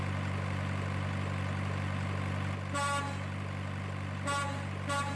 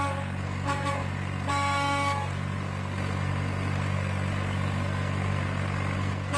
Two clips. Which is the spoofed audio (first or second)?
second